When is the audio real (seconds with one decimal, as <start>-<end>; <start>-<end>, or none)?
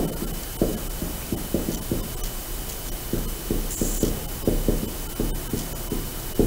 0.0-6.5